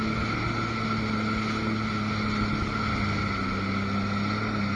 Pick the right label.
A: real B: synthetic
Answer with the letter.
A